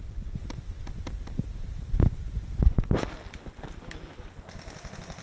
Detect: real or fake real